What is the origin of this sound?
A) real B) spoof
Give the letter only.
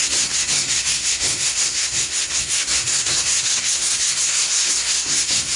B